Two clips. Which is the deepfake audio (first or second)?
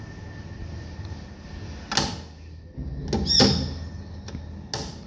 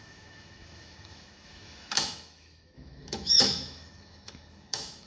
second